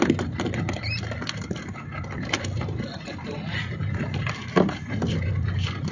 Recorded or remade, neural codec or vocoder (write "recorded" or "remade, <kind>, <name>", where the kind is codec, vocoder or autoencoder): recorded